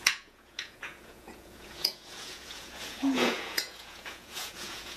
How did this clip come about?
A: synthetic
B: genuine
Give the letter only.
A